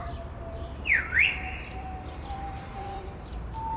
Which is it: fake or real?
fake